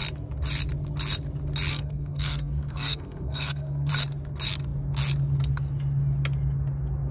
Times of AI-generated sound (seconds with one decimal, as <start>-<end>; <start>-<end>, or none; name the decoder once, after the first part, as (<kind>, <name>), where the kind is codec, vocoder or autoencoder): 1.7-3.9 (codec, SNAC)